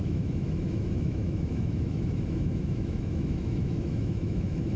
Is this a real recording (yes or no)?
no